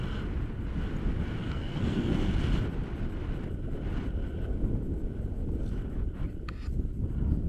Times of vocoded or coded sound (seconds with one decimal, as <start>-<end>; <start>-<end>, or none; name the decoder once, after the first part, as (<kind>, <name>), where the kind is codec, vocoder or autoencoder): 1.4-2.3 (codec, SNAC)